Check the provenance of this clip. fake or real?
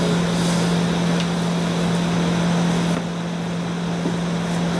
real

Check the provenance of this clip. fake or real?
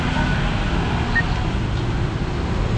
real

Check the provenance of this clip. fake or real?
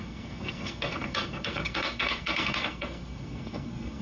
fake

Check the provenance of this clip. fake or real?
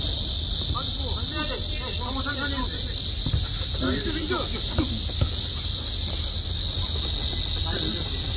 real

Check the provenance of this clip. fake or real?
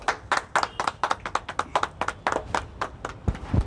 real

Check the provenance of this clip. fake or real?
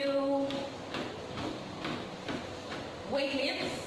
real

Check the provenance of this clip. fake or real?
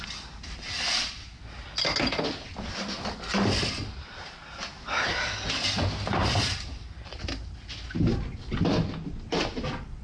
real